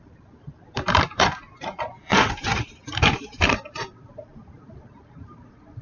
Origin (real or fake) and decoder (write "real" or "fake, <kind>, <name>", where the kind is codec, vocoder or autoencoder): fake, vocoder, BigVGAN v2